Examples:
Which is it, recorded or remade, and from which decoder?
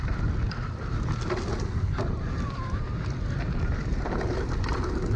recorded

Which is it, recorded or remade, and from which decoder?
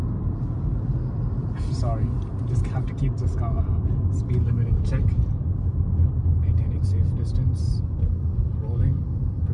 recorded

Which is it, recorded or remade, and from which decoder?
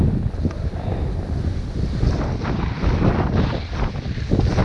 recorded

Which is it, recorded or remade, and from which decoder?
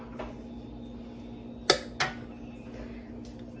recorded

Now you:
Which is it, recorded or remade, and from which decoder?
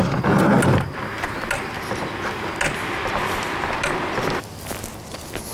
recorded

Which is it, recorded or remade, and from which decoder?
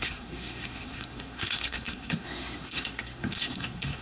remade, codec, SNAC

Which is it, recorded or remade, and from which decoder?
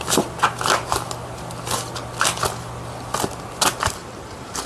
recorded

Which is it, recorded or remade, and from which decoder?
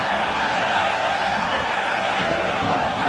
remade, codec, SNAC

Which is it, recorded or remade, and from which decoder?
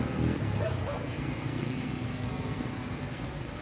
remade, codec, SNAC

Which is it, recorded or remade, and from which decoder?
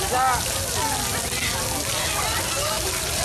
recorded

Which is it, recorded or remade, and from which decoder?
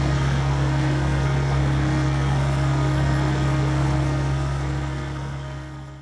remade, codec, SNAC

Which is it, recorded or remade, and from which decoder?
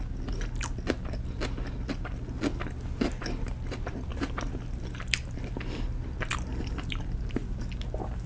recorded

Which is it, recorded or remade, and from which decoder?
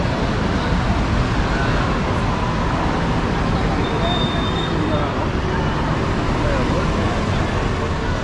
recorded